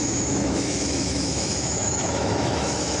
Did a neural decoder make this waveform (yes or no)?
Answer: yes